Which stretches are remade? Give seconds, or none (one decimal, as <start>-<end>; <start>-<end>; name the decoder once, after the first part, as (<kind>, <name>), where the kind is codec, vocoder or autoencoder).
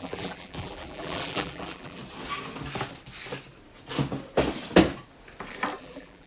0.0-2.0 (vocoder, BigVGAN v2); 5.8-6.3